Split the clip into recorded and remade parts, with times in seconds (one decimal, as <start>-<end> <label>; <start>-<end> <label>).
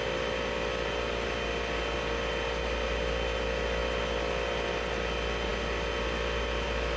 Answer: 0.0-7.0 recorded